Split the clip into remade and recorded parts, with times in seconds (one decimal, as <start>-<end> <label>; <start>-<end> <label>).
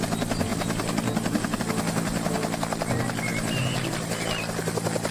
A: 0.0-5.1 recorded